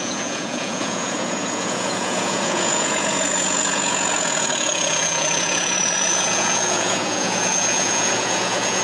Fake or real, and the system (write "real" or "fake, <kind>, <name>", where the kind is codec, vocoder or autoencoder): fake, vocoder, Vocos